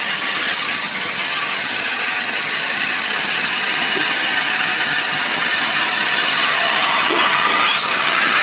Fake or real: fake